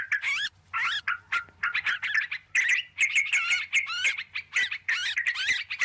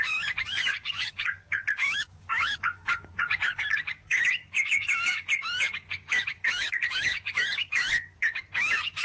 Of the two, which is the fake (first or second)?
second